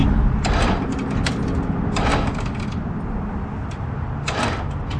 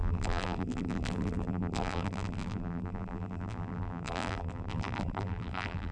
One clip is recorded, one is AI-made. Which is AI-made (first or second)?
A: second